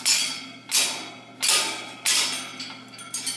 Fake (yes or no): no